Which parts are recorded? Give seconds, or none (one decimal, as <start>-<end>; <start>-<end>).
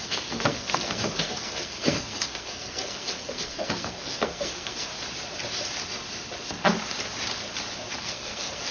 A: 4.9-8.0